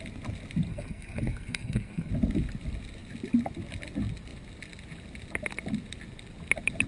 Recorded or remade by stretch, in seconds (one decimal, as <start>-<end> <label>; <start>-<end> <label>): 0.0-0.7 recorded; 0.7-2.1 remade; 2.1-6.9 recorded